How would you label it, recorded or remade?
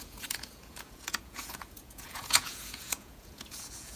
remade